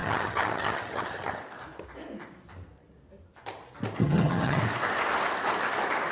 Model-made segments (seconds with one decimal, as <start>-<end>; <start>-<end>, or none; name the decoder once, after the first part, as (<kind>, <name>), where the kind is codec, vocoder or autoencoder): 0.0-1.4 (vocoder, HiFi-GAN); 4.0-4.6